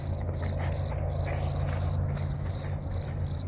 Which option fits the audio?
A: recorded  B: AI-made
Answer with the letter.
A